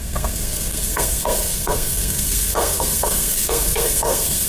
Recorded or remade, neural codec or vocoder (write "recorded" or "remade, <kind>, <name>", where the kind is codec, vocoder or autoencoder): remade, codec, SNAC